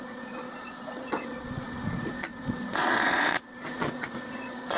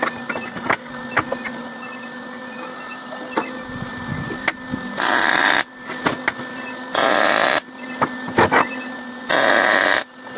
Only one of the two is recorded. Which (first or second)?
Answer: second